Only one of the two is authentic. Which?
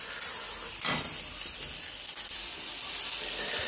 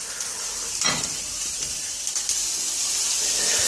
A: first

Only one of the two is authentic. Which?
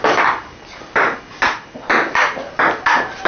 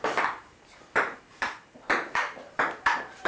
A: first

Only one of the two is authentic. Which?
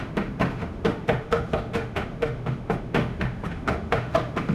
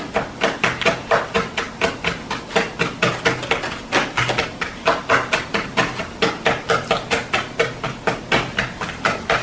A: second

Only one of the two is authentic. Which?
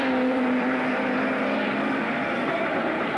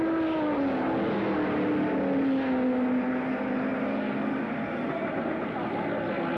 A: second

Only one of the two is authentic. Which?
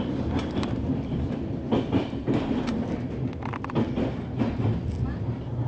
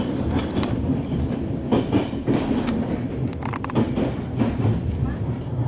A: first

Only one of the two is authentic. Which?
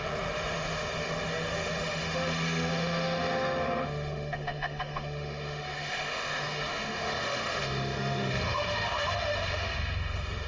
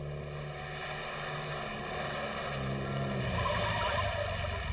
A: second